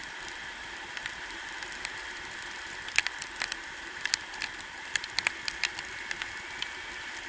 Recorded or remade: recorded